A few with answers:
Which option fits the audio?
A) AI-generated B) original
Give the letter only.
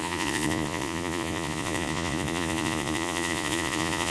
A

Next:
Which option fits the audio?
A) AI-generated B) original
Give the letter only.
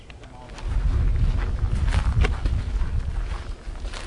B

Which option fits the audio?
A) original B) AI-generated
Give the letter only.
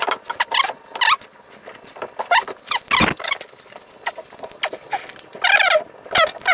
A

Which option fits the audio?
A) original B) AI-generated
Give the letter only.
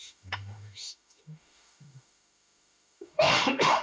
B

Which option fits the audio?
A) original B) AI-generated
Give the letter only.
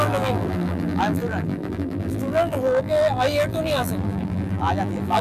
B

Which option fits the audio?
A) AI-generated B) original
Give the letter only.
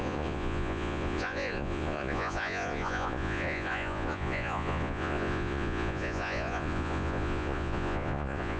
A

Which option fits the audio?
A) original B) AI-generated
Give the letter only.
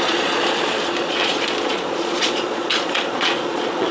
B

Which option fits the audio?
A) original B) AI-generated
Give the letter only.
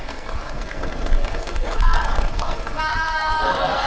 B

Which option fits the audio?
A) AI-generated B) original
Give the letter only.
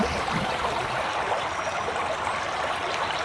B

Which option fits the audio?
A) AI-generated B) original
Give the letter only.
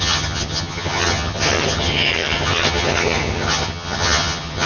A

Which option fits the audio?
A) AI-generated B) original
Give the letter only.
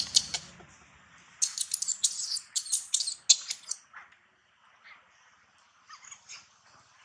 B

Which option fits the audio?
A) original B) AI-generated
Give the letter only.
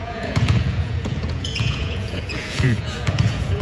B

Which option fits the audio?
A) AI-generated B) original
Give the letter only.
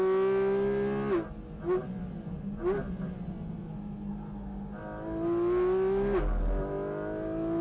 B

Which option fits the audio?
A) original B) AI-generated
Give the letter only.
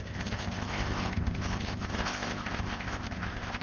B